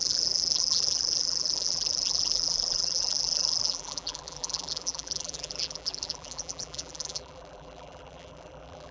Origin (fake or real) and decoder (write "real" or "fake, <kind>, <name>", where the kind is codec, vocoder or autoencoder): fake, vocoder, BigVGAN v2